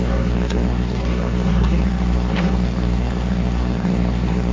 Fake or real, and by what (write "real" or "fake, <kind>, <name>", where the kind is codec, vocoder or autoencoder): fake, codec, SNAC